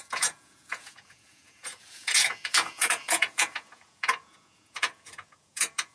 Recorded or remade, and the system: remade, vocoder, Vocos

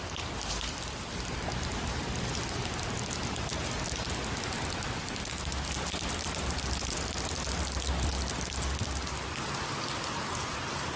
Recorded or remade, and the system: recorded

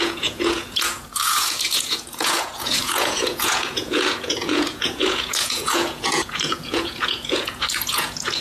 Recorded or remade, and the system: remade, vocoder, Vocos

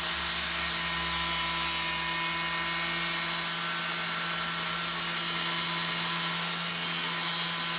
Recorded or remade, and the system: recorded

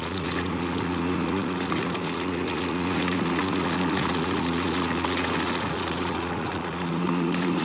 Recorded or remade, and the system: remade, vocoder, Vocos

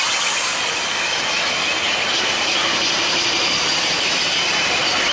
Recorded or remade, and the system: recorded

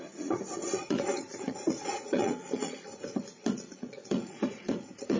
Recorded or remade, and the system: remade, vocoder, Vocos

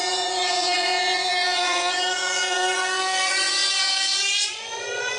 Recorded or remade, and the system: remade, vocoder, Vocos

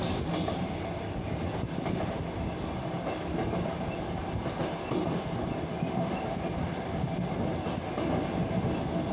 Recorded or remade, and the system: recorded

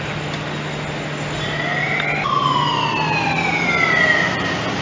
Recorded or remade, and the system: recorded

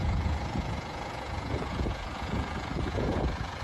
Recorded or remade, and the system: remade, vocoder, Vocos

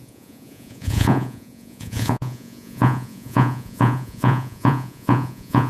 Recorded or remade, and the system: remade, vocoder, Vocos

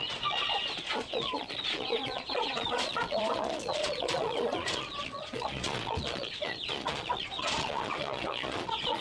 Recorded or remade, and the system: remade, vocoder, Vocos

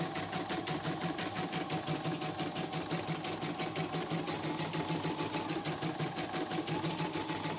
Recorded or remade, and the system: recorded